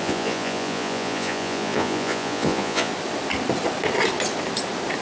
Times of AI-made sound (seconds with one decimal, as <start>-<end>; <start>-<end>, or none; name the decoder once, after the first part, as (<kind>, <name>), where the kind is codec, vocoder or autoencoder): 0.0-2.9 (vocoder, Vocos)